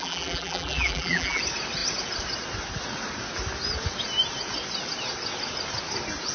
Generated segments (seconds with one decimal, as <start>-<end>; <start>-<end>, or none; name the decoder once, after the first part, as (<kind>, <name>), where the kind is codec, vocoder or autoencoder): 0.0-1.4 (vocoder, BigVGAN v2)

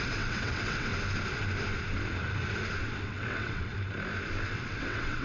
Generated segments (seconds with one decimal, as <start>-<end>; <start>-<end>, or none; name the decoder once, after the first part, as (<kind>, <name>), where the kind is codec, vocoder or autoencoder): 0.0-0.9 (vocoder, WaveNeXt); 2.8-3.7; 4.5-5.2